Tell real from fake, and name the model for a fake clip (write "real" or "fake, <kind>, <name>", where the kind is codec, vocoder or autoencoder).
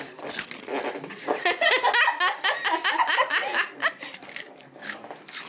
real